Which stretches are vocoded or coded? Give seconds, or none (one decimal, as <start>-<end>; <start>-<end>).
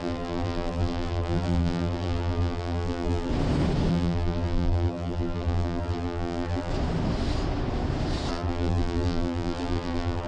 0.0-3.3; 3.9-6.7; 8.3-10.3